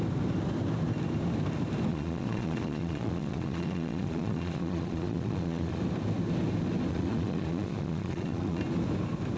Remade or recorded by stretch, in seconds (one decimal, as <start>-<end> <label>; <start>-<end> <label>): 0.0-1.9 recorded; 1.9-5.8 remade; 5.8-6.9 recorded; 6.9-8.6 remade; 8.6-9.4 recorded